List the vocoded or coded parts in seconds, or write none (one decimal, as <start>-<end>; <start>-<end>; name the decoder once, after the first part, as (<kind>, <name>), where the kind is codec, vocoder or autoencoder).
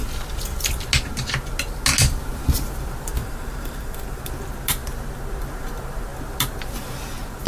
3.2-4.2 (vocoder, BigVGAN v2)